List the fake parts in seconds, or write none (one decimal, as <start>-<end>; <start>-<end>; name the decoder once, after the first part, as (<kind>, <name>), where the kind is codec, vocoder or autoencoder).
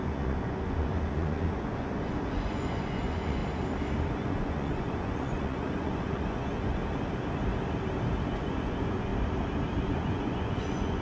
0.0-3.4 (vocoder, Vocos); 4.1-6.8; 8.3-9.1; 9.8-11.0